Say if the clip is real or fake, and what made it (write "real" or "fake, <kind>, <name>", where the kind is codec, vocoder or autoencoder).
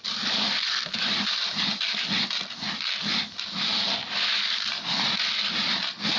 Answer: real